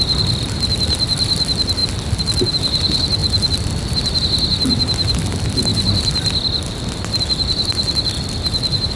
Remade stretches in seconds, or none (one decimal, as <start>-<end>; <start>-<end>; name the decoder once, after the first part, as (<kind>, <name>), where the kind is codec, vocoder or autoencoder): 3.2-4.2 (vocoder, BigVGAN v2); 5.7-7.2